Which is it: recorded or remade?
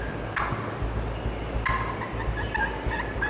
recorded